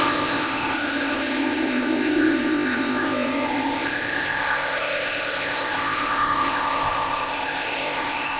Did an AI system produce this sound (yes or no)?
yes